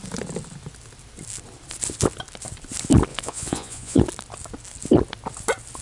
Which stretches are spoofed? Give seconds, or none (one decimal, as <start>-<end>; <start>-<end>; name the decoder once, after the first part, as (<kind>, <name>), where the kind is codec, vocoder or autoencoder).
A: 3.1-4.0 (vocoder, Vocos)